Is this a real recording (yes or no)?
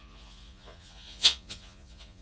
no